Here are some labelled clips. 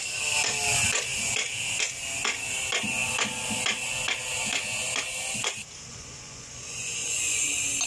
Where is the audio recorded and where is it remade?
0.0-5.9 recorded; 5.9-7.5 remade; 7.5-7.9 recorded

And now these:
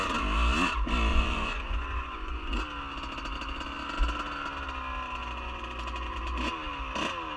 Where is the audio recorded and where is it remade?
0.0-1.1 recorded; 1.1-2.6 remade; 2.6-5.2 recorded; 5.2-6.5 remade; 6.5-7.4 recorded

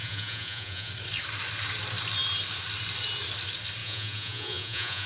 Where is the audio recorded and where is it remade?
0.0-0.9 remade; 0.9-3.8 recorded; 3.8-5.1 remade

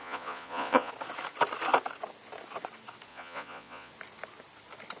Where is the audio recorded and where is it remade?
0.0-0.9 remade; 0.9-3.1 recorded; 3.1-3.9 remade; 3.9-5.0 recorded